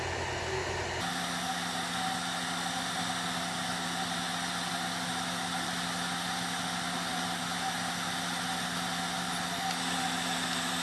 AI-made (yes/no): no